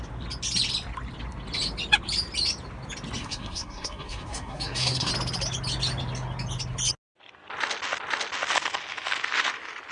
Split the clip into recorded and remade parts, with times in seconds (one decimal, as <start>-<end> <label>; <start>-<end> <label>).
0.0-3.2 recorded; 3.2-5.1 remade; 5.1-9.9 recorded